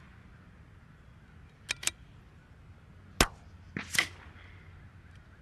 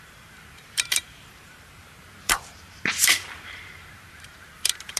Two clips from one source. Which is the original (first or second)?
first